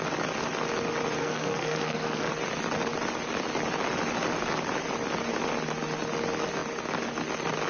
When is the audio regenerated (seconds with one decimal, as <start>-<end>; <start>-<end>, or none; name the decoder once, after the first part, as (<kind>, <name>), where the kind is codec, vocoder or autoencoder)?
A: 1.2-2.3 (codec, SNAC)